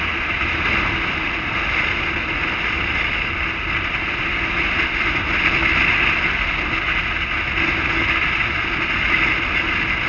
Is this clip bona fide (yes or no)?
yes